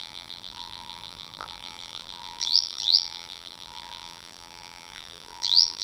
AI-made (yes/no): yes